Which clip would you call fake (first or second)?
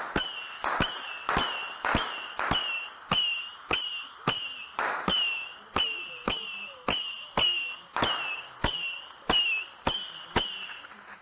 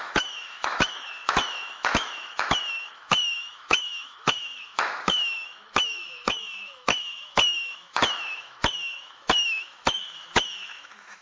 second